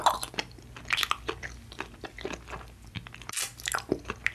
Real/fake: real